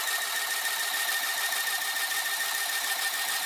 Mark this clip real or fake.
real